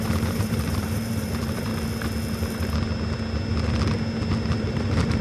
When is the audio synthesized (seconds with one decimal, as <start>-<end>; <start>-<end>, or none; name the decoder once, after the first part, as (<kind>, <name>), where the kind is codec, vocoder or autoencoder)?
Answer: 0.0-1.7 (vocoder, BigVGAN v2); 4.6-5.2